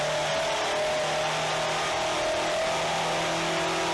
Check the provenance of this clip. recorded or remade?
recorded